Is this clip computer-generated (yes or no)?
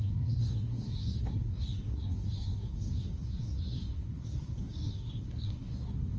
yes